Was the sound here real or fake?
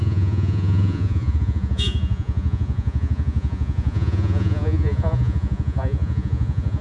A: fake